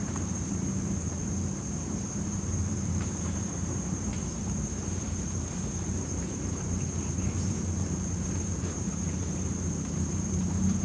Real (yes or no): no